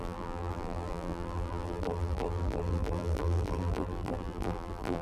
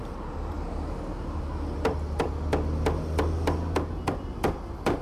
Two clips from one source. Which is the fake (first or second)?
first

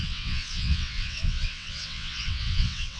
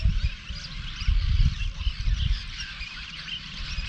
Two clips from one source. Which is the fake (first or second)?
first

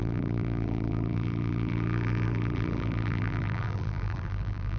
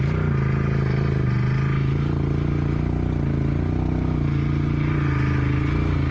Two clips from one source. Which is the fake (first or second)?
first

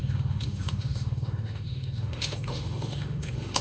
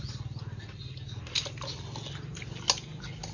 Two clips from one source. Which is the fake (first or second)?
first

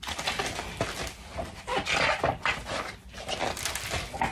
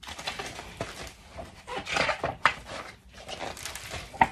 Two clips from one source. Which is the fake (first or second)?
second